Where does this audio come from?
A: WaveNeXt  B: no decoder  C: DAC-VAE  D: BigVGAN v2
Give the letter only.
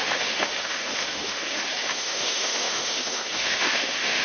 C